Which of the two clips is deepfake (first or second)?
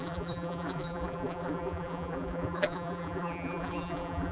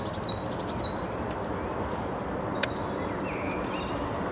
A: first